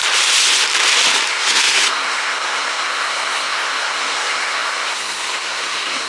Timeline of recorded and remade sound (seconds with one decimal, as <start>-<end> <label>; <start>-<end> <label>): 0.0-1.3 recorded; 1.3-6.1 remade